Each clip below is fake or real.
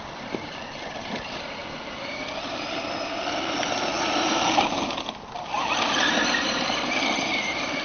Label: real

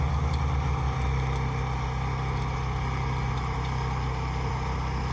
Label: real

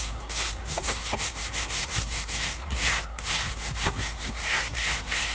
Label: fake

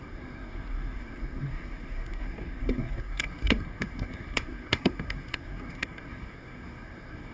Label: fake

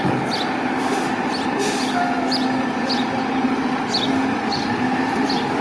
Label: real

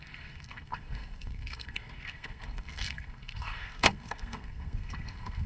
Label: fake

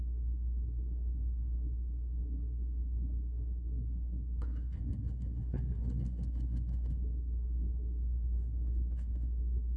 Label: fake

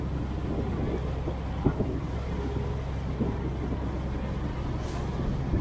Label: real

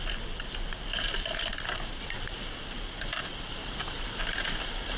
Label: real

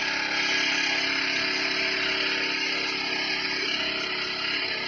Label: real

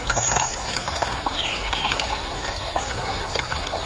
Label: fake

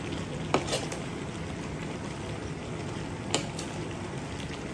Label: real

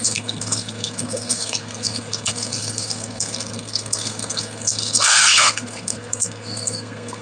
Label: fake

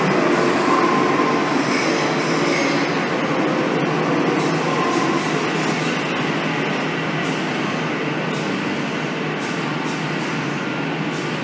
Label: real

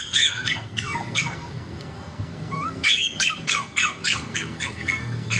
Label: fake